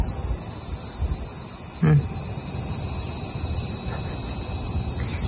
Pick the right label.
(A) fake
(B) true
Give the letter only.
B